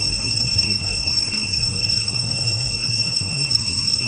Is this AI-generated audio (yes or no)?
yes